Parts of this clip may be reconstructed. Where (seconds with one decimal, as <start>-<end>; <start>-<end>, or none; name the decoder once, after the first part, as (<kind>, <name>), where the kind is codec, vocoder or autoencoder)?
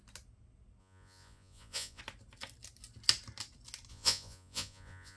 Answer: 0.8-2.0 (vocoder, Vocos); 3.9-5.2